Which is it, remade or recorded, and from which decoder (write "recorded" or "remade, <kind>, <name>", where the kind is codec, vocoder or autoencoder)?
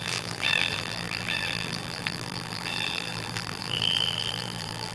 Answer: remade, vocoder, BigVGAN v2